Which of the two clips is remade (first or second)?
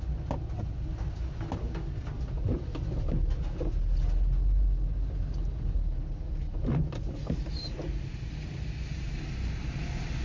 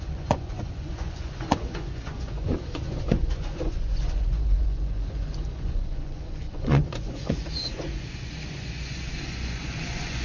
second